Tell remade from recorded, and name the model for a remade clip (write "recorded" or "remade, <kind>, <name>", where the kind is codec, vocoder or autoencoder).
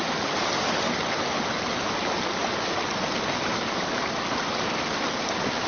recorded